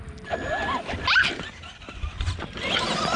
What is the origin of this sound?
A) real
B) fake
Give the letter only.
B